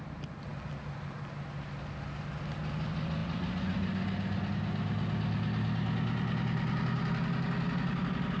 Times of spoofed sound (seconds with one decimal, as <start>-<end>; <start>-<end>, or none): none

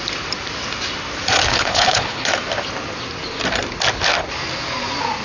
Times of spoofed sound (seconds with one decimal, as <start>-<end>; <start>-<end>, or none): 1.5-2.3

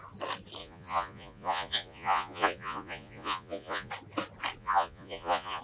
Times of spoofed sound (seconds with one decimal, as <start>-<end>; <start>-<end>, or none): 0.6-3.9; 4.6-5.6

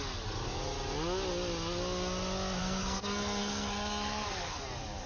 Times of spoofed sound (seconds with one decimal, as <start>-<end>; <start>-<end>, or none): 2.6-4.6